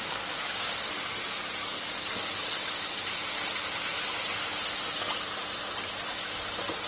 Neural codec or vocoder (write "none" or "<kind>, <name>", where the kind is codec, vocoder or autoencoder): none